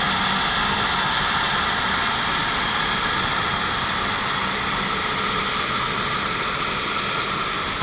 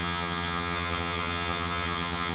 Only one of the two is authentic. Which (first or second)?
first